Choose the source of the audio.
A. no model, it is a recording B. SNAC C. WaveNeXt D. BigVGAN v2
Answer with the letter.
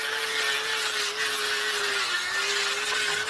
A